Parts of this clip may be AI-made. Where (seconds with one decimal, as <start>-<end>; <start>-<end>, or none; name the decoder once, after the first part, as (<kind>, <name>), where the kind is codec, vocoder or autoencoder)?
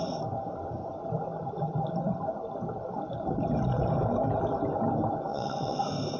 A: 5.3-5.8 (vocoder, WaveNeXt)